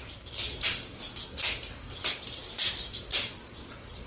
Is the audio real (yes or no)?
yes